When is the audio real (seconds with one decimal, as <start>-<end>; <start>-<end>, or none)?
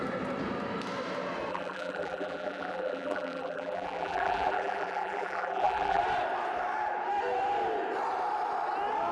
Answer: 0.0-1.5; 6.0-9.1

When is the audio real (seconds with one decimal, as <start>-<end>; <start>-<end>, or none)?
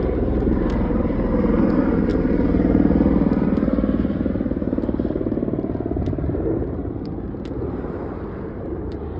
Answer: 2.1-4.3; 6.8-8.6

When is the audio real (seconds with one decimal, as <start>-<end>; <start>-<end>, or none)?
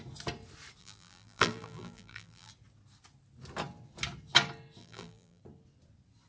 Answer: 0.0-0.8; 2.5-4.8; 5.4-6.3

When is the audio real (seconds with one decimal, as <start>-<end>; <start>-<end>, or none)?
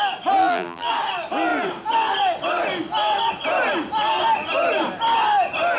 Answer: 0.0-0.4; 0.9-5.8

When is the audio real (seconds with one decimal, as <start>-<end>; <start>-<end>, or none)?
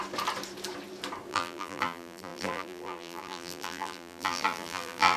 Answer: 0.0-1.3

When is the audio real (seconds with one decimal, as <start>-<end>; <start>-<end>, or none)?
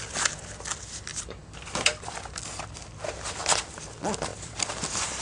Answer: 0.0-1.1; 2.2-4.3